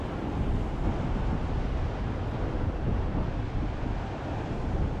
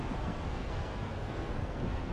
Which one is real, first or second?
first